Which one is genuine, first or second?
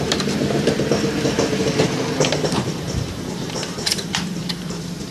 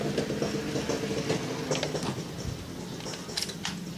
second